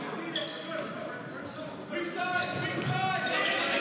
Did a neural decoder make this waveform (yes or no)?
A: no